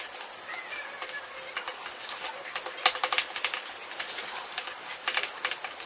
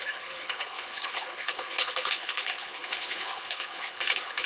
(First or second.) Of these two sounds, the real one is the first